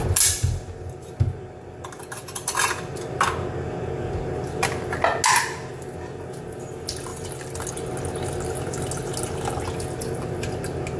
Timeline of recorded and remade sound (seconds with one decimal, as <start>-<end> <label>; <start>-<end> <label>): 0.0-11.0 recorded